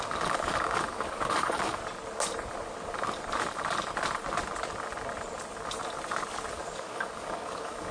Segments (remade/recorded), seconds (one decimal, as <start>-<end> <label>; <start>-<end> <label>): 0.0-1.8 remade; 1.8-6.5 recorded; 6.5-7.9 remade